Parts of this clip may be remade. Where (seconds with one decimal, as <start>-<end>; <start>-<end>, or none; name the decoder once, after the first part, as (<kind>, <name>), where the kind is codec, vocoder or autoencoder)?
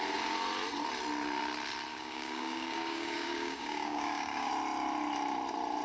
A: 1.9-4.5 (codec, DAC)